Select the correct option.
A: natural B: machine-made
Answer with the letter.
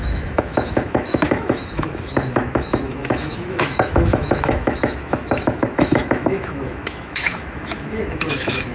B